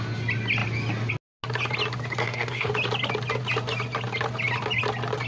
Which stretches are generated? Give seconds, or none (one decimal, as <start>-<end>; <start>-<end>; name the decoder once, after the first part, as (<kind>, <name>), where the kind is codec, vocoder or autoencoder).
2.2-2.7 (codec, SNAC)